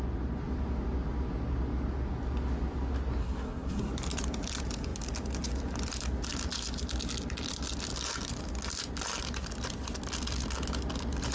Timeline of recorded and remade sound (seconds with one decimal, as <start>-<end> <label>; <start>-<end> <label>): 0.0-3.2 recorded; 3.2-3.9 remade; 3.9-11.3 recorded